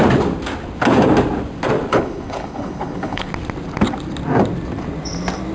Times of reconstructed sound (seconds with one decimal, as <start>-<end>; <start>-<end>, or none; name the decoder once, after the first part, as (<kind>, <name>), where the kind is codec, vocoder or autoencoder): 1.9-3.3 (codec, HILCodec)